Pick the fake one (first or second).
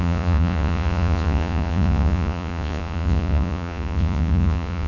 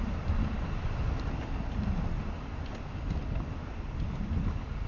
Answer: first